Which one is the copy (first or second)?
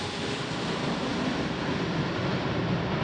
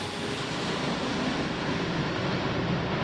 first